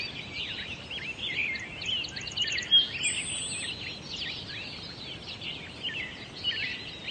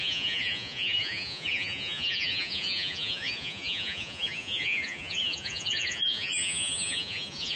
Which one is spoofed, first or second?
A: second